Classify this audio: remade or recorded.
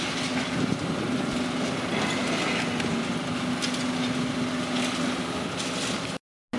recorded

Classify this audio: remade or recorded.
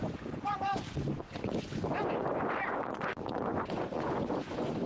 remade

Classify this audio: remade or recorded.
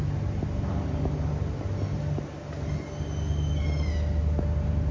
recorded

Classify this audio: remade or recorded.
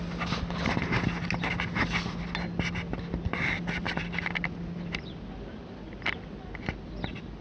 recorded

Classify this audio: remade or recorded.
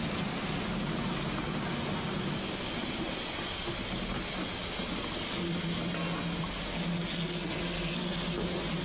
recorded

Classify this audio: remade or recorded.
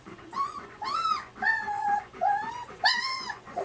remade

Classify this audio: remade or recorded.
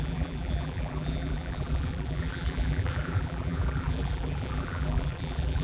remade